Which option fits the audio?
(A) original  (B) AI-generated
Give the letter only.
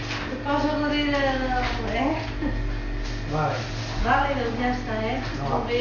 A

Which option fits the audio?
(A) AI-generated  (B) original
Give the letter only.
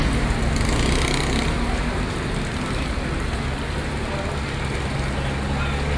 B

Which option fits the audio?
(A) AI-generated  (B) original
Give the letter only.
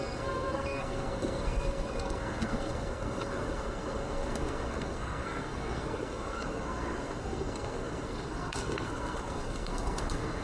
A